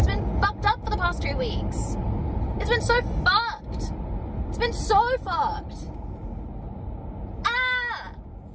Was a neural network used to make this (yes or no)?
no